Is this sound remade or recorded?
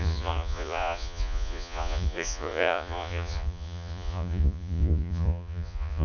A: remade